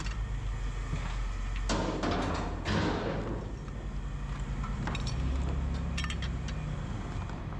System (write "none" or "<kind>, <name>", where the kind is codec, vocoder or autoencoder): none